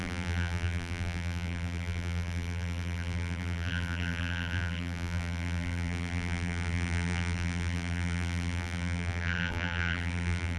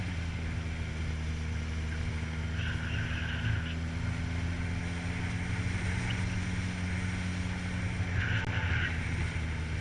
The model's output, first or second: first